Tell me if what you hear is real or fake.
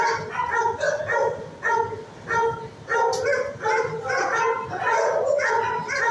real